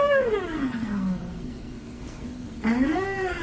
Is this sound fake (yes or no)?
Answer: yes